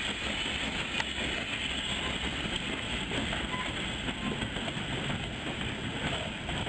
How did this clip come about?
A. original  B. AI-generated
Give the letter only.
A